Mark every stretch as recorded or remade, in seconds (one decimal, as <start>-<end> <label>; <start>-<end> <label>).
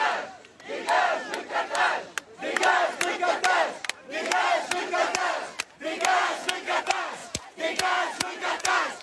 0.0-6.1 recorded; 6.1-6.8 remade; 6.8-7.2 recorded; 7.2-9.0 remade